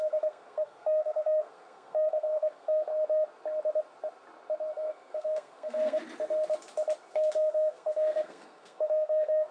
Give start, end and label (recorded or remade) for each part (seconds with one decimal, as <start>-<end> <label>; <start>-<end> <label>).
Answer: 0.0-2.9 remade; 2.9-4.7 recorded; 4.7-6.0 remade; 6.0-7.1 recorded; 7.1-9.5 remade